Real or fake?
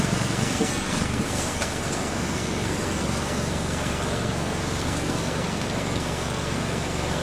fake